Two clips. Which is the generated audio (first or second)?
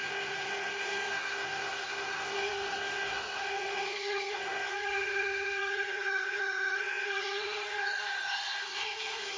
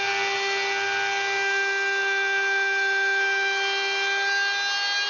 first